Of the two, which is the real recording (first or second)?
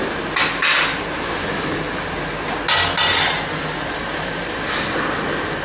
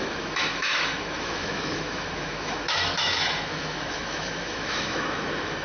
first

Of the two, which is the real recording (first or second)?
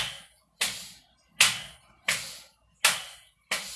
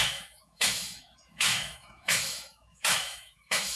first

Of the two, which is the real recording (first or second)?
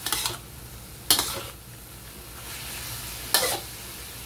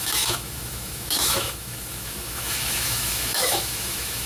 first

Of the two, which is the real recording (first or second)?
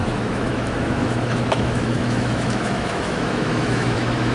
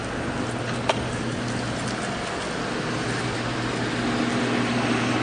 second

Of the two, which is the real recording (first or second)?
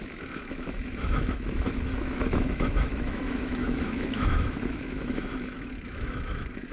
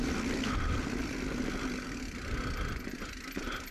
second